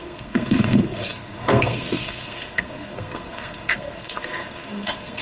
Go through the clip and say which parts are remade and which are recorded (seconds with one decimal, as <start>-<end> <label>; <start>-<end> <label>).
0.0-5.2 remade